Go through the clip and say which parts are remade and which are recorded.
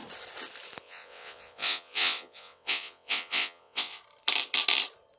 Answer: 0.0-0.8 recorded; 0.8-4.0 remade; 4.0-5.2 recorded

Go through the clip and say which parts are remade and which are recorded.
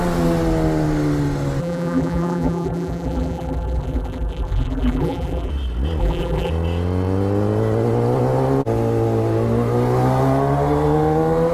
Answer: 0.0-1.6 recorded; 1.6-5.5 remade; 5.5-6.0 recorded; 6.0-6.5 remade; 6.5-11.5 recorded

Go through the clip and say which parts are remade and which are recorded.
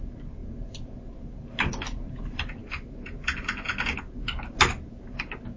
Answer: 0.0-5.6 recorded